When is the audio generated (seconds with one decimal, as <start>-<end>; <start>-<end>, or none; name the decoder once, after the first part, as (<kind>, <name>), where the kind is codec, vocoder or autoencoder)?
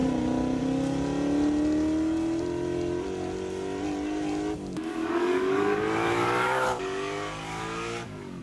4.9-8.4 (codec, DAC)